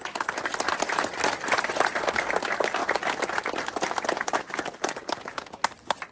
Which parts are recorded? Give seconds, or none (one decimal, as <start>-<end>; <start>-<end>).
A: 0.0-6.1